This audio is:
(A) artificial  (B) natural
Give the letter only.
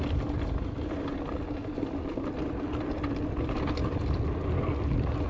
B